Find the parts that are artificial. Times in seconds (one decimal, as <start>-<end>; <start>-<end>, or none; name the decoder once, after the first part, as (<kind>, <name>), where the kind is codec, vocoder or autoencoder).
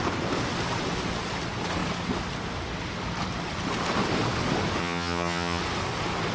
4.8-5.6 (vocoder, HiFi-GAN)